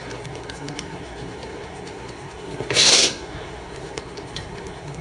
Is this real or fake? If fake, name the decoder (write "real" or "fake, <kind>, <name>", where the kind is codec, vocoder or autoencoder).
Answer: fake, codec, SNAC